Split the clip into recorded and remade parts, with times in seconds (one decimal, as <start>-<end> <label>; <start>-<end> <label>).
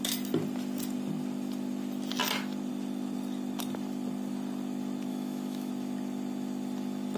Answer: 0.0-5.1 recorded; 5.1-5.7 remade; 5.7-7.2 recorded